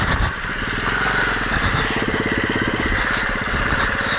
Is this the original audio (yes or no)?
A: yes